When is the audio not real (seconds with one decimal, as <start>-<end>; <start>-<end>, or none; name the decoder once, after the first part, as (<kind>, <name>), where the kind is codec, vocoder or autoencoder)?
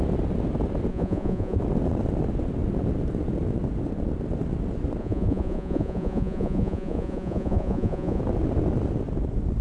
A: 0.9-1.6 (vocoder, Vocos); 5.0-8.2